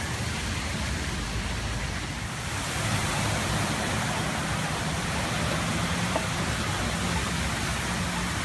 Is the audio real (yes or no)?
yes